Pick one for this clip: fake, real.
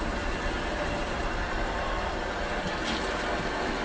real